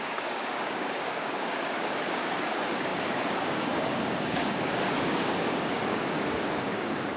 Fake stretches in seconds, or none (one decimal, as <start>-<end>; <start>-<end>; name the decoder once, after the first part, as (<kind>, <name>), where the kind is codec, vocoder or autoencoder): 0.0-7.2 (codec, DAC)